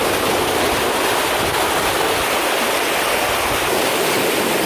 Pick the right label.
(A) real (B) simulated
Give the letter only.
A